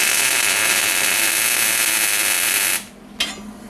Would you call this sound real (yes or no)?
yes